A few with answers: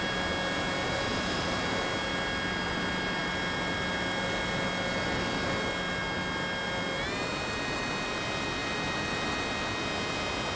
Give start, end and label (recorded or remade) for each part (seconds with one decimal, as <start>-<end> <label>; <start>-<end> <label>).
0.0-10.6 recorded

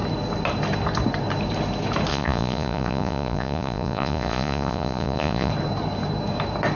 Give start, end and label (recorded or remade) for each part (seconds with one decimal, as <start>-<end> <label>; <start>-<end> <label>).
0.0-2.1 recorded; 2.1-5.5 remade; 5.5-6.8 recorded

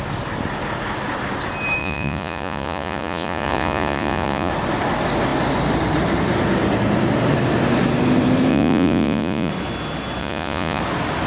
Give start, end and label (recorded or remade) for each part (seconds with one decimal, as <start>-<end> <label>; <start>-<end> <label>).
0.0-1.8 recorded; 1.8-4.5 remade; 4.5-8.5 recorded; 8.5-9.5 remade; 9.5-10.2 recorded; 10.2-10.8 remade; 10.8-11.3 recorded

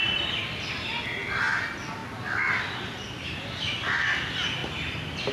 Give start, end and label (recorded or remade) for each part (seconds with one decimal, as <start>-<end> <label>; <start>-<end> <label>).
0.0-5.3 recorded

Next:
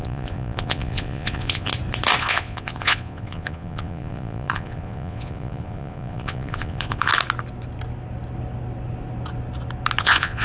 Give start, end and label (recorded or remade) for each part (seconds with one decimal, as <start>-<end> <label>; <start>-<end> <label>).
0.0-1.7 remade; 1.7-2.2 recorded; 2.2-7.1 remade; 7.1-10.0 recorded; 10.0-10.4 remade

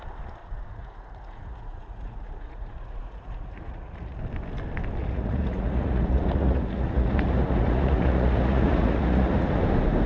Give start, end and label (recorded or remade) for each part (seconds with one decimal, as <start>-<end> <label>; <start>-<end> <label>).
0.0-0.4 recorded; 0.4-4.2 remade; 4.2-5.0 recorded; 5.0-9.6 remade; 9.6-10.1 recorded